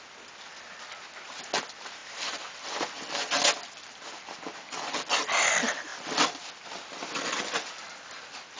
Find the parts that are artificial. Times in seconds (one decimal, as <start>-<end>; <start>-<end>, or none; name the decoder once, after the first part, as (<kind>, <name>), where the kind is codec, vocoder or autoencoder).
none